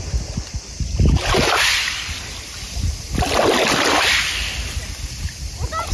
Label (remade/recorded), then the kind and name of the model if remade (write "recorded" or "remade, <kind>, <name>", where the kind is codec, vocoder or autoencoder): recorded